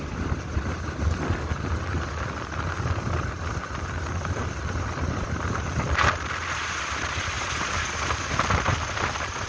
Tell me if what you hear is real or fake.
real